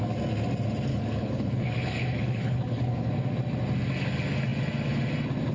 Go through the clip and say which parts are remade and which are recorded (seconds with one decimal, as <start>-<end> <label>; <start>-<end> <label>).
0.0-0.9 recorded; 0.9-3.1 remade; 3.1-5.5 recorded